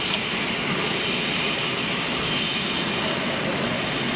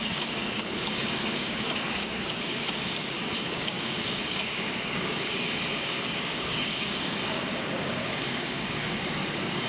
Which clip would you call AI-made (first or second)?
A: second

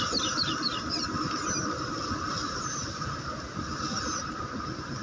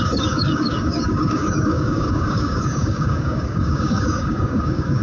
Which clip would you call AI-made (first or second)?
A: second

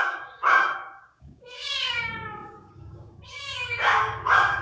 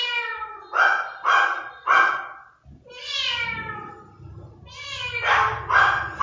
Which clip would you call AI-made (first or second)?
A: first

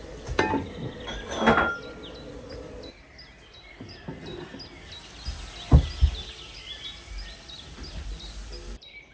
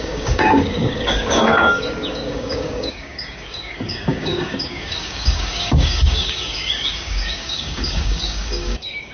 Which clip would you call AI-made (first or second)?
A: second